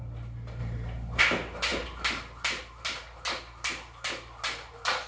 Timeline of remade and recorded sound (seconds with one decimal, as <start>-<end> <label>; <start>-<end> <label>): 0.0-5.1 recorded